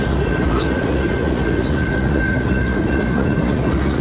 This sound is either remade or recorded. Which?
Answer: remade